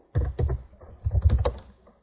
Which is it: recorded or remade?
recorded